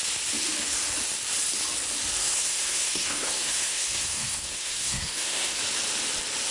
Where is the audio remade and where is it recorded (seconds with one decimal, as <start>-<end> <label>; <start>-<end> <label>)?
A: 0.0-2.2 recorded; 2.2-5.6 remade; 5.6-6.5 recorded